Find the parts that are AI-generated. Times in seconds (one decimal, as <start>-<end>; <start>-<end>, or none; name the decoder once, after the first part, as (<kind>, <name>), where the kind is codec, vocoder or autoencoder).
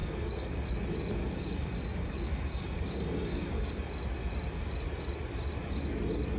0.0-0.7 (codec, DAC); 1.2-3.8